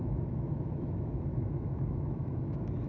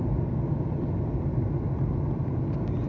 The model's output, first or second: first